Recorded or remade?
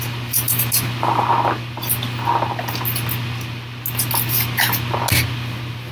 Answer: recorded